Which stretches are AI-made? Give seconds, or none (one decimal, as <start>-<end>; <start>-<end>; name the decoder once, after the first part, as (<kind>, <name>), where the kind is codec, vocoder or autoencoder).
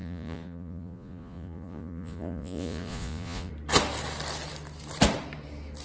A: 0.0-3.5 (vocoder, Vocos)